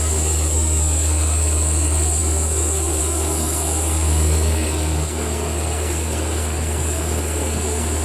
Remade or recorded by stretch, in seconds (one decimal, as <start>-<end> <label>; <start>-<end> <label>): 0.0-8.0 remade